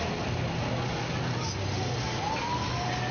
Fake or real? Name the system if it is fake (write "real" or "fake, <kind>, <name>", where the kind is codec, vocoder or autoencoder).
real